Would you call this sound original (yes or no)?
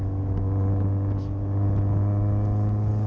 yes